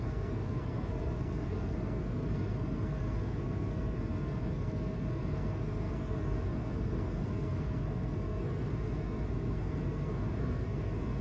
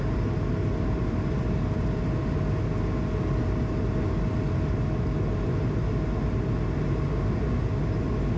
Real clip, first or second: second